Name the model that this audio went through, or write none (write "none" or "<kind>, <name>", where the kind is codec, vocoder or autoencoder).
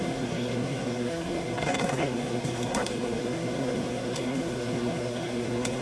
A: codec, SNAC